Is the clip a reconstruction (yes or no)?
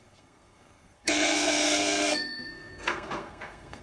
yes